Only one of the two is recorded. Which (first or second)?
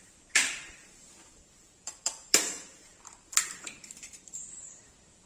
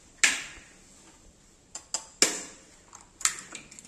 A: second